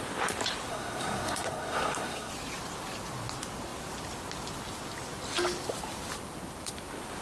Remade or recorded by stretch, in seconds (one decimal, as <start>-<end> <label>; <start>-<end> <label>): 0.0-0.7 recorded; 0.7-2.3 remade; 2.3-7.2 recorded